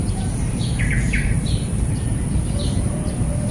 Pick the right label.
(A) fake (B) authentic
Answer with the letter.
A